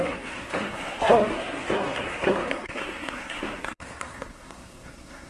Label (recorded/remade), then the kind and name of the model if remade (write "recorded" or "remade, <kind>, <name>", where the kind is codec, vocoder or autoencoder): remade, codec, SNAC